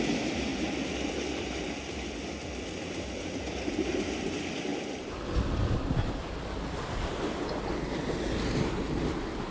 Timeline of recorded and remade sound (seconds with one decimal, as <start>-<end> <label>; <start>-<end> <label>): 0.0-9.5 recorded